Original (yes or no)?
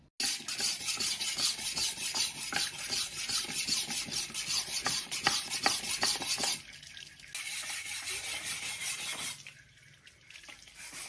yes